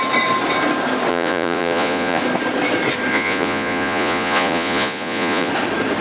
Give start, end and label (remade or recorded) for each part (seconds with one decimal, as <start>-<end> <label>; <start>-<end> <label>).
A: 0.0-1.1 recorded; 1.1-2.2 remade; 2.2-3.1 recorded; 3.1-5.5 remade; 5.5-6.0 recorded